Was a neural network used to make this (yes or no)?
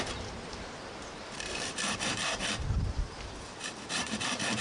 yes